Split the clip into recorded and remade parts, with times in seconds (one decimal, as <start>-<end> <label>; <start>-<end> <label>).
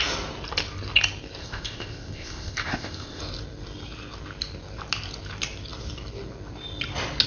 0.0-1.4 recorded; 1.4-3.2 remade; 3.2-7.3 recorded